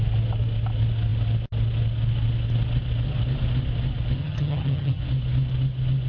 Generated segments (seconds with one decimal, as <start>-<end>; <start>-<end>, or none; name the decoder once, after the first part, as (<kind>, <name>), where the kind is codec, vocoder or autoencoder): 4.2-5.0 (vocoder, HiFi-GAN)